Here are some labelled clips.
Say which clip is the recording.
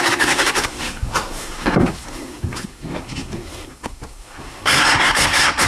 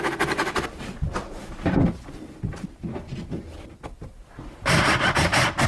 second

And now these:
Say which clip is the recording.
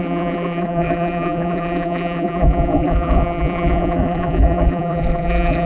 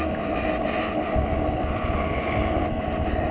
second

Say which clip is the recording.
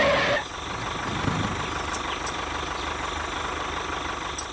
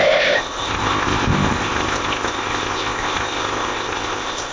first